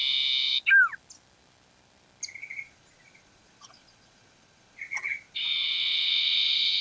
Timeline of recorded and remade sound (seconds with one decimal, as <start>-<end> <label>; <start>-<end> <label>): 0.0-2.4 recorded; 2.4-6.8 remade